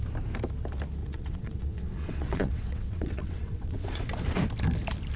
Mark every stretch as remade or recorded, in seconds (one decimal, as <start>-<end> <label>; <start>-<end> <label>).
0.0-1.0 recorded; 1.0-4.1 remade; 4.1-5.2 recorded